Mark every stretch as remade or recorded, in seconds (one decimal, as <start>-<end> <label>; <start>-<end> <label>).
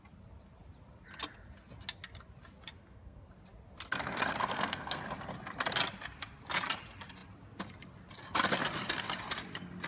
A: 0.0-2.8 recorded; 2.8-3.3 remade; 3.3-4.4 recorded; 4.4-5.0 remade; 5.0-9.9 recorded